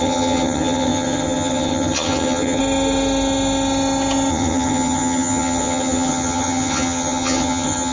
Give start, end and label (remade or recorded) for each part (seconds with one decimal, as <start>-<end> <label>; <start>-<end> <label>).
0.0-2.6 remade; 2.6-4.3 recorded; 4.3-7.9 remade